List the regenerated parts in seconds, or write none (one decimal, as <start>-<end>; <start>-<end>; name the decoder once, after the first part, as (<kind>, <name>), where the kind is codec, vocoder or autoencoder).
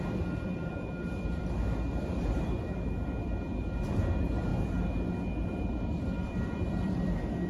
0.0-4.5 (vocoder, BigVGAN v2); 5.6-7.5